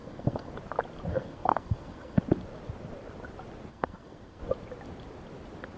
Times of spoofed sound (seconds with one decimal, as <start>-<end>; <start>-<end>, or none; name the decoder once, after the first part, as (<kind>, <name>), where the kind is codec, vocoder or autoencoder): 0.0-0.5 (codec, SNAC); 1.1-2.2; 3.7-4.4